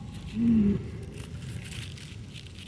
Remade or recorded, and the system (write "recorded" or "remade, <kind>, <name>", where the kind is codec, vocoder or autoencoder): remade, vocoder, BigVGAN v2